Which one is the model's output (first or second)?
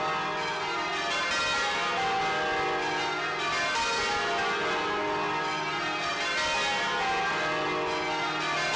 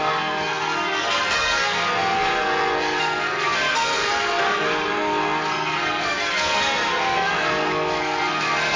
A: second